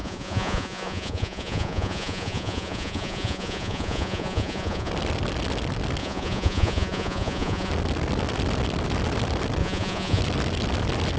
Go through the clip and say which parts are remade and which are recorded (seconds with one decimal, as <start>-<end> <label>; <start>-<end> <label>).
0.0-4.9 remade; 4.9-6.0 recorded; 6.0-7.7 remade; 7.7-9.6 recorded; 9.6-10.2 remade; 10.2-11.2 recorded